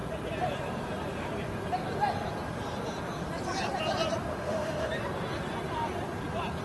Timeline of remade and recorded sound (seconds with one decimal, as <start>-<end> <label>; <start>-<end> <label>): 0.0-4.3 recorded; 4.3-4.9 remade; 4.9-6.6 recorded